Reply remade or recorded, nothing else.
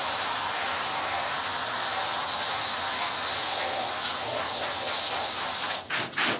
recorded